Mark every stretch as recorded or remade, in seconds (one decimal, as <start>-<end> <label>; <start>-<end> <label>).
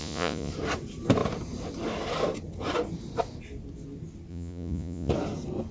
0.0-0.5 remade; 0.5-4.3 recorded; 4.3-5.1 remade; 5.1-5.7 recorded